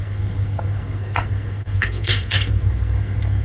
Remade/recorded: remade